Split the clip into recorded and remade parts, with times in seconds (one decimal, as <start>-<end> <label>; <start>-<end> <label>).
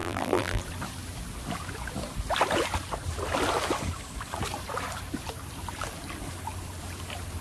0.0-0.6 remade; 0.6-7.4 recorded